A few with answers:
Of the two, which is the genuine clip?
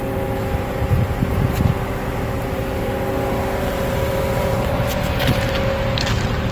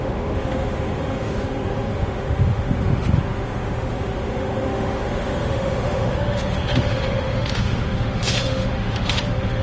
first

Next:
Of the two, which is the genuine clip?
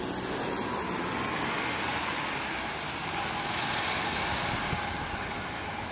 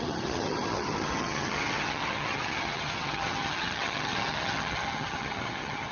first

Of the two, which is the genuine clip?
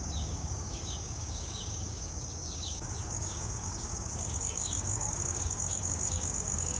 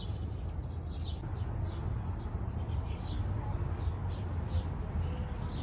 second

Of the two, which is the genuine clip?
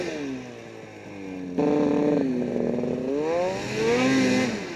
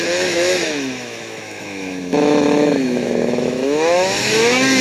first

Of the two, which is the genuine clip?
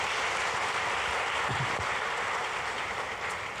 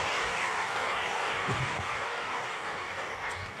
first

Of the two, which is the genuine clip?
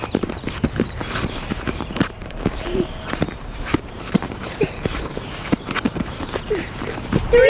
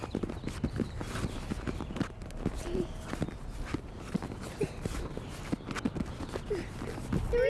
second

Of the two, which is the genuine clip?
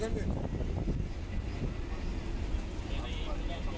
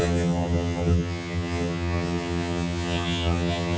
first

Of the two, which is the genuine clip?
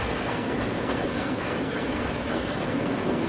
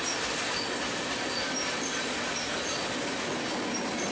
second